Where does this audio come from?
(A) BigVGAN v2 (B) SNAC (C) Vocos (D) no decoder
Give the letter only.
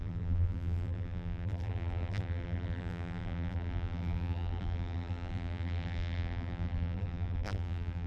A